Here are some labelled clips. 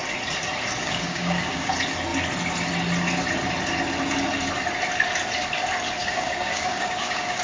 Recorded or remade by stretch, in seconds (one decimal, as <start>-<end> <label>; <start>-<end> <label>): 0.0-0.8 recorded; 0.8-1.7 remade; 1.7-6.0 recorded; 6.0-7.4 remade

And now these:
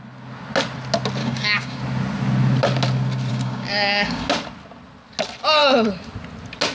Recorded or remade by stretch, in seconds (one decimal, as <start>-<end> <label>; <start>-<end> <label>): 0.0-1.2 recorded; 1.2-1.8 remade; 1.8-3.3 recorded; 3.3-4.3 remade; 4.3-6.7 recorded

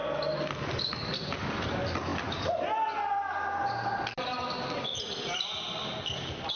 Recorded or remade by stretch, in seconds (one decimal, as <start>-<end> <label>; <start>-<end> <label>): 0.0-6.6 recorded

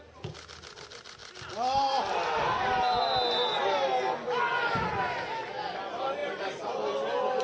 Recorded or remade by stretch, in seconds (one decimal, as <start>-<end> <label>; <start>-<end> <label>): 0.0-7.4 recorded